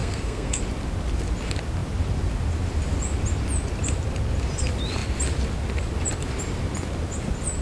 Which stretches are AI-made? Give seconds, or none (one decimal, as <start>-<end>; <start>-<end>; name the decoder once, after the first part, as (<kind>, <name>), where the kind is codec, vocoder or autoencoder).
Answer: 0.0-0.6 (codec, SNAC)